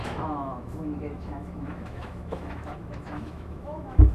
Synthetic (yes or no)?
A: yes